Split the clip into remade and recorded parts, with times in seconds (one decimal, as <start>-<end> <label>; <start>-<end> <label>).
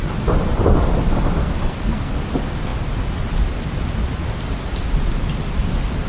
0.0-1.4 recorded; 1.4-2.2 remade; 2.2-6.1 recorded